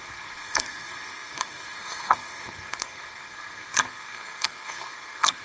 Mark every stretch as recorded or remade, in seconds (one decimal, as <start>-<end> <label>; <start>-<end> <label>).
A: 0.0-5.4 remade